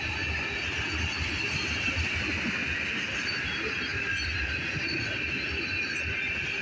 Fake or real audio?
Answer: real